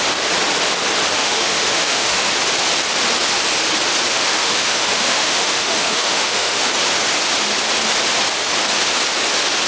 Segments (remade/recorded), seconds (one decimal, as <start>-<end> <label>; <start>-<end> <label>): 0.0-1.2 recorded; 1.2-2.3 remade; 2.3-4.1 recorded; 4.1-6.7 remade; 6.7-9.7 recorded